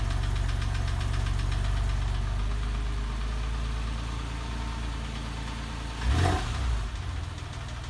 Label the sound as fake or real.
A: real